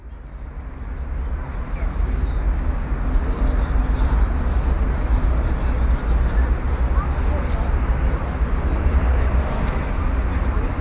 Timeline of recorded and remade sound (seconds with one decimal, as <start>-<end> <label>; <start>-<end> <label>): 0.0-10.8 recorded